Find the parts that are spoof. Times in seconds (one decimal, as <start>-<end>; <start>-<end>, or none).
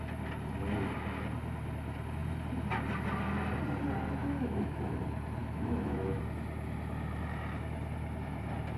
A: 4.2-5.0; 5.4-6.2